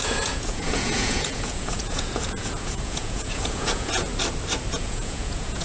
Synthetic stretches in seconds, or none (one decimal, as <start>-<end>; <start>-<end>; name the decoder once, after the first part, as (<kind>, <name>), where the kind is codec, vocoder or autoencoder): 0.0-4.1 (vocoder, Vocos); 4.7-5.6